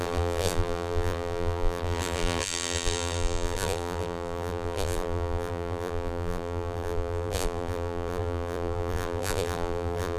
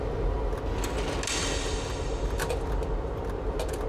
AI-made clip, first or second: first